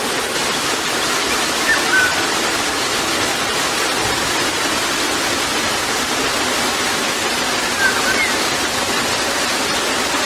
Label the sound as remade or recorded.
recorded